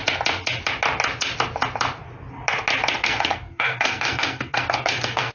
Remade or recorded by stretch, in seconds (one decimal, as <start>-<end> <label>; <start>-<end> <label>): 0.0-3.0 recorded; 3.0-5.3 remade